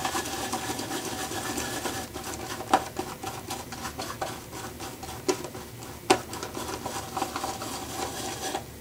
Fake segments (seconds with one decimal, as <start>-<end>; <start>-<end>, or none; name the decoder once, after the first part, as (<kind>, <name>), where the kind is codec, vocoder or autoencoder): 0.0-0.6 (vocoder, BigVGAN v2)